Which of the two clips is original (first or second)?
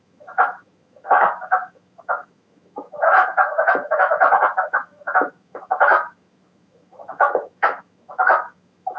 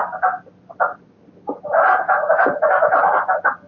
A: second